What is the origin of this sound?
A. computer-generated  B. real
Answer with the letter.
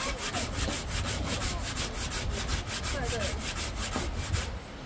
B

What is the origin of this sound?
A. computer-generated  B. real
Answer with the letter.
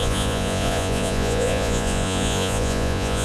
A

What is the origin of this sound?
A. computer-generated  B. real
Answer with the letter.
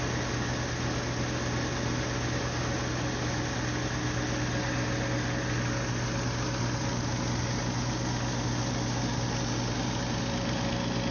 B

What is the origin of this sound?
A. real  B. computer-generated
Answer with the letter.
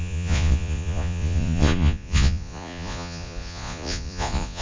B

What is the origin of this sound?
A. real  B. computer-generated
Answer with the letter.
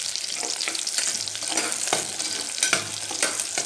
A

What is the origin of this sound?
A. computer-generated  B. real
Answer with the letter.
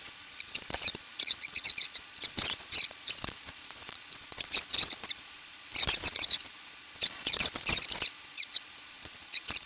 A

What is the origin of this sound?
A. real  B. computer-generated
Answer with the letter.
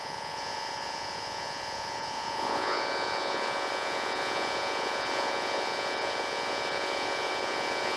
B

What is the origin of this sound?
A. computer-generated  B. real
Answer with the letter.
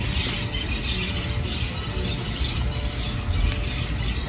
B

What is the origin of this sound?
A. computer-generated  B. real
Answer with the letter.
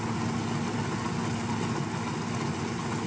B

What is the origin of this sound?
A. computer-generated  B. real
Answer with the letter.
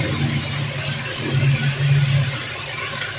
B